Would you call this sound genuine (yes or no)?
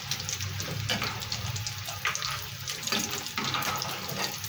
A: yes